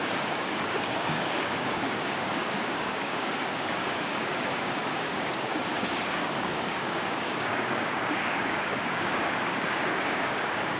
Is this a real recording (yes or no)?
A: no